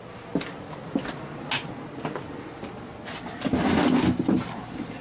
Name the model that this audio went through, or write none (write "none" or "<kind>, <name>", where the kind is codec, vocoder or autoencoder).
none